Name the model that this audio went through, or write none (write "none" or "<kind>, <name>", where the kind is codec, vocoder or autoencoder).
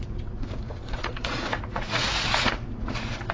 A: vocoder, Vocos